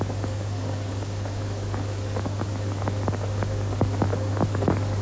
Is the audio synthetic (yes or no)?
yes